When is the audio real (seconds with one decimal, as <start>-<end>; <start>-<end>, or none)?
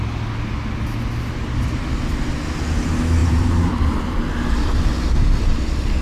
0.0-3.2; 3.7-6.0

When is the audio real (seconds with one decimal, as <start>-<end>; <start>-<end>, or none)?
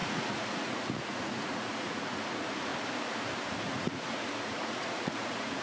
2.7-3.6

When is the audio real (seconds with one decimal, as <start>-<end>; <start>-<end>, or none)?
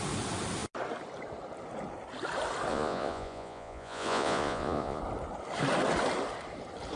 0.0-2.7; 5.0-7.0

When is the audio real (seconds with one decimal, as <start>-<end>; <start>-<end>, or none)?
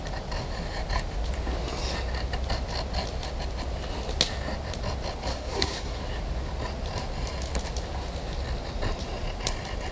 0.0-5.3; 6.0-9.9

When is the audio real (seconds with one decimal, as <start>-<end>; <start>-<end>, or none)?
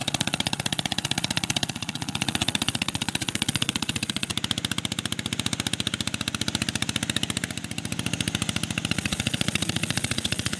4.3-8.9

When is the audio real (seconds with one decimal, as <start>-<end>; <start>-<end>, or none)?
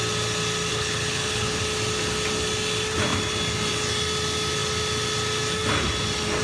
0.0-0.7; 1.6-6.4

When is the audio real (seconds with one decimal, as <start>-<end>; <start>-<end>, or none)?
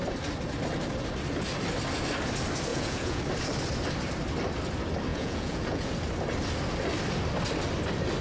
0.0-2.7; 3.2-5.1; 5.9-8.2